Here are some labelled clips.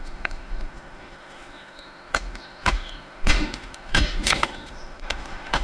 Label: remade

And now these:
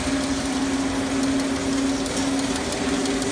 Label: recorded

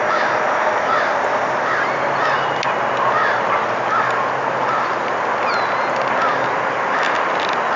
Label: recorded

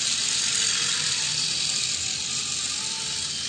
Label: recorded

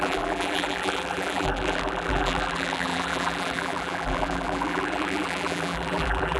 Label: remade